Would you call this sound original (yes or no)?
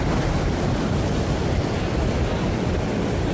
yes